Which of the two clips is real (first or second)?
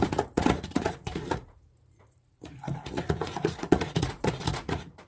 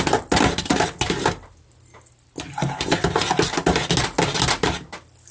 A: second